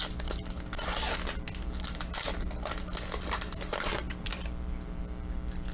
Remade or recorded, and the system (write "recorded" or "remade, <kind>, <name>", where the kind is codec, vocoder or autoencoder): recorded